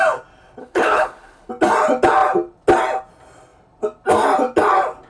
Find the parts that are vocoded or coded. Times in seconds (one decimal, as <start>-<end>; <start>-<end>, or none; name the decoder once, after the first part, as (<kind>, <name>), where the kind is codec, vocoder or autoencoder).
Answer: 0.6-1.5 (codec, HILCodec)